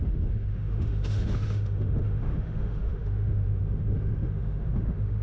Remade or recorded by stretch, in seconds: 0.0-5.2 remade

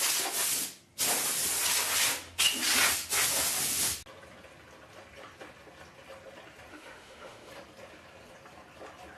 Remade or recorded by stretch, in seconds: 0.0-6.7 recorded; 6.7-7.5 remade; 7.5-9.2 recorded